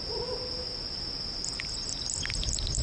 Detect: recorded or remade recorded